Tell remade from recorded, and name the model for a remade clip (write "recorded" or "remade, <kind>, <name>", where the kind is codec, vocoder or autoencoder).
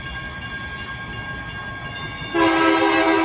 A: recorded